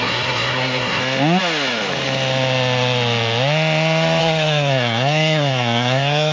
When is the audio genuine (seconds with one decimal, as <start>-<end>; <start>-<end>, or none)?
1.0-4.2